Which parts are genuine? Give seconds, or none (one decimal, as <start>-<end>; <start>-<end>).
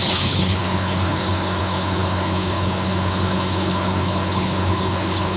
none